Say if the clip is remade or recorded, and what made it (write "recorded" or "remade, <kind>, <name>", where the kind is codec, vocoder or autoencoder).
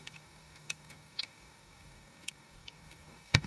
remade, codec, DAC